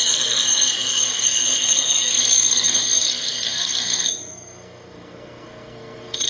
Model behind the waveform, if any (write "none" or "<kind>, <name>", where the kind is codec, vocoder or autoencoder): codec, SNAC